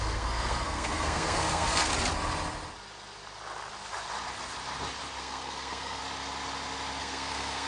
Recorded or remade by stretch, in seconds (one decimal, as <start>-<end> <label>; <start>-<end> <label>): 0.0-1.9 remade; 1.9-5.2 recorded; 5.2-6.0 remade; 6.0-7.0 recorded; 7.0-7.7 remade